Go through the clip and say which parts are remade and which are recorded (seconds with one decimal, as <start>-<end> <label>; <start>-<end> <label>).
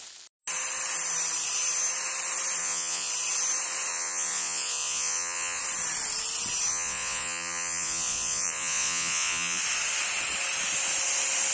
0.0-2.6 recorded; 2.6-3.1 remade; 3.1-3.9 recorded; 3.9-5.6 remade; 5.6-6.7 recorded; 6.7-9.6 remade; 9.6-11.5 recorded